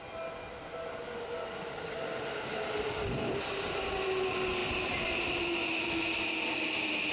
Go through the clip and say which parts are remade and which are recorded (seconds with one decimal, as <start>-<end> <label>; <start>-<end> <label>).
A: 0.0-7.1 recorded